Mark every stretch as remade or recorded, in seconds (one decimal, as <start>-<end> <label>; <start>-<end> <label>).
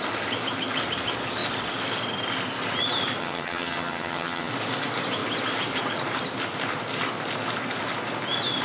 0.0-3.2 recorded; 3.2-4.5 remade; 4.5-8.6 recorded